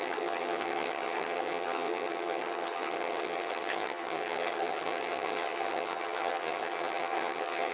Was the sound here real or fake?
fake